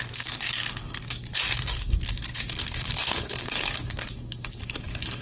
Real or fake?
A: fake